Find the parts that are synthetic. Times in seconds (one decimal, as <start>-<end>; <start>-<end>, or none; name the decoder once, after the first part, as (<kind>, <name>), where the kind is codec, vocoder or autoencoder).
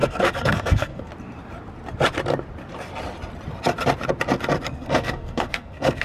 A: 0.0-1.1 (codec, SNAC); 4.7-6.0